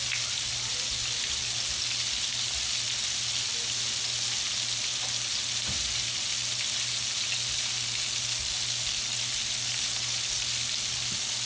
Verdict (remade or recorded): recorded